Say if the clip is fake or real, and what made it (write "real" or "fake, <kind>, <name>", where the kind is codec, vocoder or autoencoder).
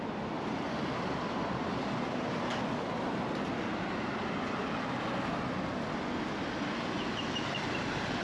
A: real